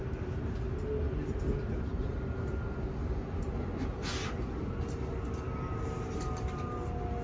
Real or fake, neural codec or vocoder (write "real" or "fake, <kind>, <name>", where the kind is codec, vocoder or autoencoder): real